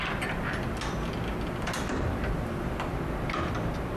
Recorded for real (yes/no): yes